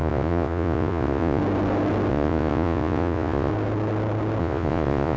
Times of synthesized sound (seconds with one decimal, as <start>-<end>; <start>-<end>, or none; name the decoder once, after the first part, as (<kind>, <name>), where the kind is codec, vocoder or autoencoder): 0.0-1.4 (vocoder, Vocos); 2.1-3.5; 4.4-5.2